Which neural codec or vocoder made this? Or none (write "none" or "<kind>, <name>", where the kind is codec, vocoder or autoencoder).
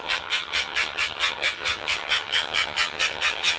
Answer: vocoder, HiFi-GAN